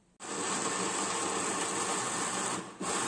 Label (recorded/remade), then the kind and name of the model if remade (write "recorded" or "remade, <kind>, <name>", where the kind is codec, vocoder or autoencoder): recorded